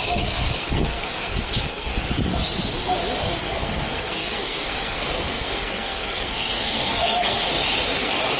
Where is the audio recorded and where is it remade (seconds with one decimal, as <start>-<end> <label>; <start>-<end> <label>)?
0.0-1.9 remade; 1.9-3.4 recorded; 3.4-7.4 remade; 7.4-8.0 recorded; 8.0-8.4 remade